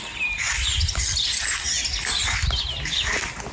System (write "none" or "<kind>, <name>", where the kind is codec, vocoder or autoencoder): none